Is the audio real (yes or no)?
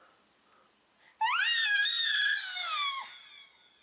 yes